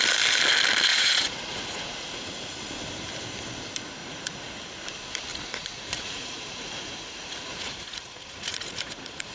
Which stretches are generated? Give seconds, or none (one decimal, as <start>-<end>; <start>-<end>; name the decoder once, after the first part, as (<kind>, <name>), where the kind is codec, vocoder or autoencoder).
0.9-2.2 (vocoder, Vocos); 4.0-4.5; 5.3-9.3

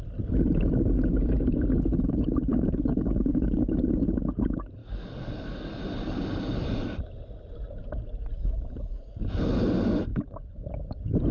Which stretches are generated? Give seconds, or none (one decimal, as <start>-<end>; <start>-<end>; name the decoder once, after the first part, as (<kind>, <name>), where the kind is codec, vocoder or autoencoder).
2.5-3.8 (codec, DAC); 4.8-5.8; 10.1-10.7

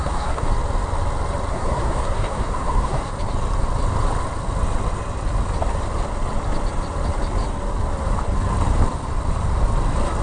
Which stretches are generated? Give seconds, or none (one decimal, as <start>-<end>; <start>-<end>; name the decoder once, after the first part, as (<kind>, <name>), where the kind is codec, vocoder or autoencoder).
0.0-0.5 (codec, SNAC); 1.5-3.1

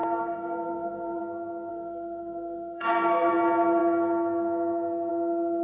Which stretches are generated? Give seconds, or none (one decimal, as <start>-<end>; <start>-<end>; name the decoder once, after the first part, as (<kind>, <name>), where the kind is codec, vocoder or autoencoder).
0.0-1.2 (codec, SNAC); 1.7-3.3

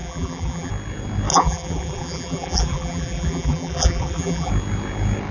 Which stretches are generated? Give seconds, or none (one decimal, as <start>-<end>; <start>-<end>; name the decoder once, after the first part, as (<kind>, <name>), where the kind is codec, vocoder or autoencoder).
0.0-0.7 (vocoder, BigVGAN v2); 1.3-4.5

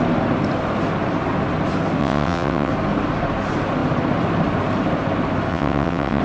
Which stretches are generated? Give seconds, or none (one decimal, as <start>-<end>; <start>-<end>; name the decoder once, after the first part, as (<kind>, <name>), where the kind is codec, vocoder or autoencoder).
2.0-2.7 (vocoder, WaveNeXt); 5.5-6.2

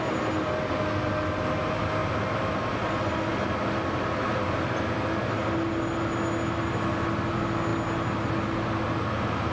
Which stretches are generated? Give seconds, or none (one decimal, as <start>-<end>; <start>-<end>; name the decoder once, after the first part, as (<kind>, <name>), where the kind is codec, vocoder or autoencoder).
none